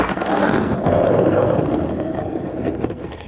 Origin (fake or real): fake